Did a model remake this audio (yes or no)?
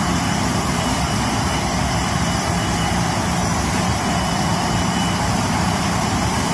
yes